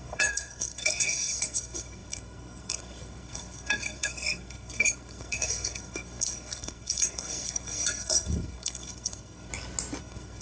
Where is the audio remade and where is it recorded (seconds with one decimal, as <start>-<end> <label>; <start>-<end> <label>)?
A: 0.0-9.5 remade; 9.5-10.0 recorded; 10.0-10.4 remade